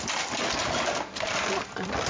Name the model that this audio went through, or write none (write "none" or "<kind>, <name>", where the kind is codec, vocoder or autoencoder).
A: none